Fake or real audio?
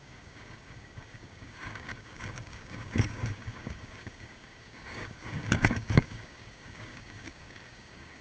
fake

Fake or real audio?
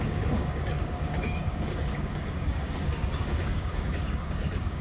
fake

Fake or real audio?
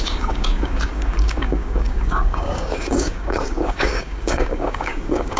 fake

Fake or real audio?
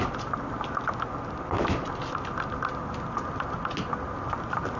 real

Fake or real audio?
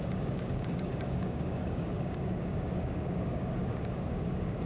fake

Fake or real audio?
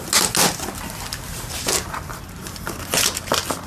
real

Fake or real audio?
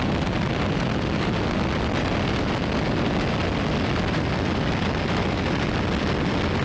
real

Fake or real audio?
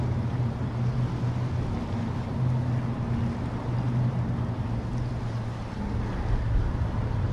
real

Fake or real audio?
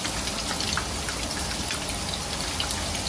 real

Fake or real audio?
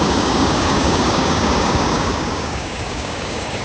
fake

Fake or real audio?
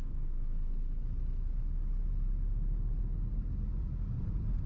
real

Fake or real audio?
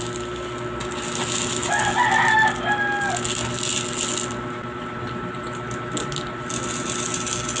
real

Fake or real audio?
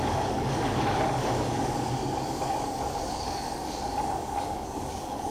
fake